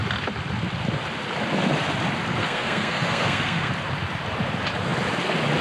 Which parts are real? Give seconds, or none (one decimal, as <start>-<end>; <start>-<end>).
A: 0.0-2.4; 3.7-5.6

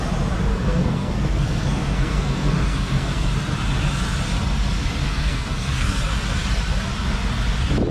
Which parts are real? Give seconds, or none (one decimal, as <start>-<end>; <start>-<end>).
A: 0.0-0.5; 3.3-5.0; 6.0-7.9

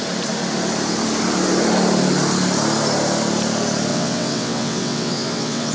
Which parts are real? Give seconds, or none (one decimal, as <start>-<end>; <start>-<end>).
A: 0.0-3.9

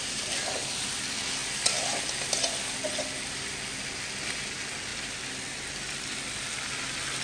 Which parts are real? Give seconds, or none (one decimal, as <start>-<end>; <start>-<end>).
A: 0.0-7.2

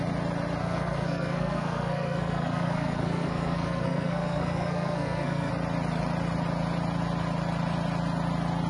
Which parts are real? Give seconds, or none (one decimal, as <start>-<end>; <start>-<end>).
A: 0.0-0.6; 5.5-8.7

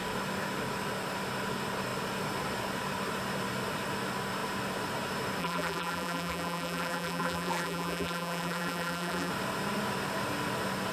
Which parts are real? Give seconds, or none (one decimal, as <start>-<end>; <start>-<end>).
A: 0.0-5.4; 9.3-10.9